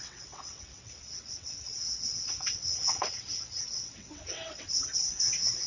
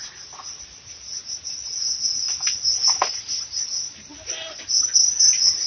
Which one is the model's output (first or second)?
first